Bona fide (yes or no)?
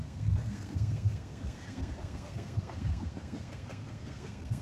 no